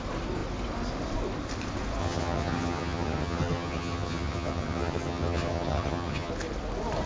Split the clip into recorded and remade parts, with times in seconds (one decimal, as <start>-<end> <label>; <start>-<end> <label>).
0.0-2.0 recorded; 2.0-6.3 remade; 6.3-7.1 recorded